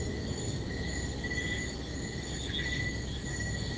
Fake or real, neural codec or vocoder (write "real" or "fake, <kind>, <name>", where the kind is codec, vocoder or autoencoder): real